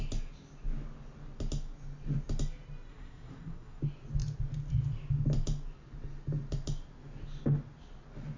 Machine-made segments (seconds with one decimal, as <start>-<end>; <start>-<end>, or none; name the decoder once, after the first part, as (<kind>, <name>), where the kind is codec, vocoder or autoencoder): 2.9-3.8 (codec, SNAC)